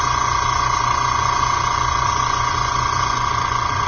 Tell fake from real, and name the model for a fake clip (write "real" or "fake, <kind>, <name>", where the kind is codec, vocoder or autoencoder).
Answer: fake, vocoder, Vocos